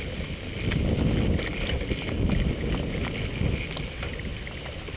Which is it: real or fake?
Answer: real